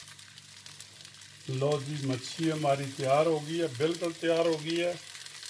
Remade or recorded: recorded